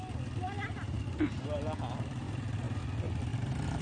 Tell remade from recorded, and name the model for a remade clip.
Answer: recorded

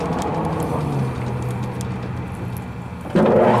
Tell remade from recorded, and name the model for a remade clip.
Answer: recorded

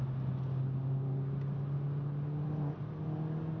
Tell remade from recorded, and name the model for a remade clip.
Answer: recorded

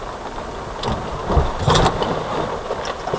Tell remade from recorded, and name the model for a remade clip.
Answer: recorded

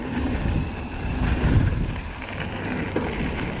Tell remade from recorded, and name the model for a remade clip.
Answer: recorded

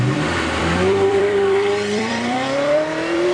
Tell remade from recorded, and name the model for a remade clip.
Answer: remade, vocoder, BigVGAN v2